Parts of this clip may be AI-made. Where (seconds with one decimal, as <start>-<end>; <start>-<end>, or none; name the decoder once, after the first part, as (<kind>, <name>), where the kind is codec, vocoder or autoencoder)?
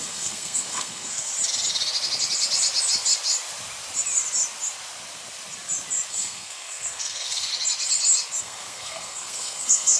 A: 0.0-1.3 (codec, SNAC); 6.1-7.5; 8.4-10.0